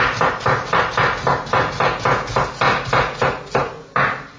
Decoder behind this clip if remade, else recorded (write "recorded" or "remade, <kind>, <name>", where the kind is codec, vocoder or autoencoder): recorded